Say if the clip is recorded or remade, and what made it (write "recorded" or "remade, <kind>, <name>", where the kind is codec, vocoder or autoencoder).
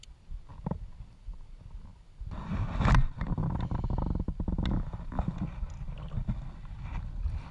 recorded